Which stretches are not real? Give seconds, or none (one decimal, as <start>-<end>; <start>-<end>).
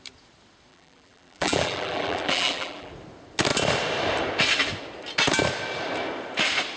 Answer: 0.7-2.9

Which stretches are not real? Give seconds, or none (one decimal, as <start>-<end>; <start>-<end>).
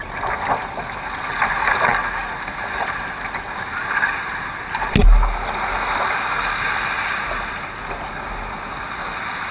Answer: none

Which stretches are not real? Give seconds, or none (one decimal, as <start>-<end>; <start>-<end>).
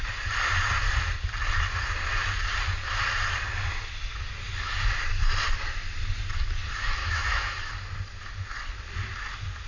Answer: 7.0-7.7